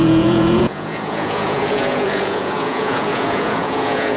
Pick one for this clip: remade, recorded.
remade